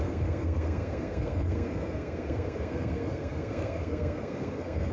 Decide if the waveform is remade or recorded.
remade